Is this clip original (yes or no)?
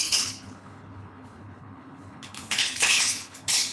no